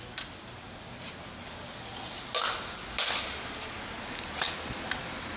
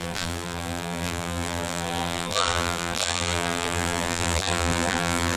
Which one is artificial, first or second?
second